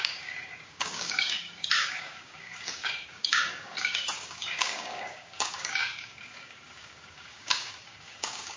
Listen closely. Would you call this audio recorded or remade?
remade